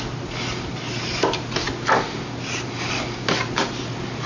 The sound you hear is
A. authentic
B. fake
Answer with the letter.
A